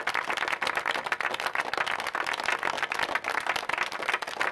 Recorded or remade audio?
recorded